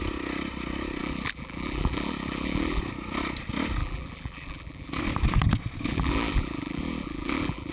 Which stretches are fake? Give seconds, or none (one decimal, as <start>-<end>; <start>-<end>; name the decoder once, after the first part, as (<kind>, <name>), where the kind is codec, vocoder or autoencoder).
1.0-2.8 (vocoder, BigVGAN v2); 3.8-5.0; 5.9-7.7